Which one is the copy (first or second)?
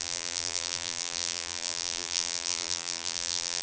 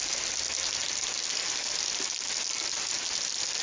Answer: first